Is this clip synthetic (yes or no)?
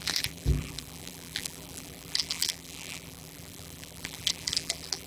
yes